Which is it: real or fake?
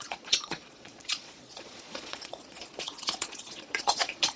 fake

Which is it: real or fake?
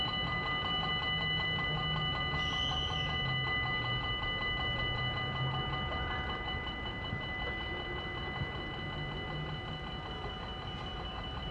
real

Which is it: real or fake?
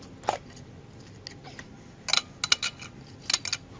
real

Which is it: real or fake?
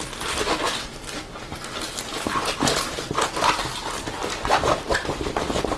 real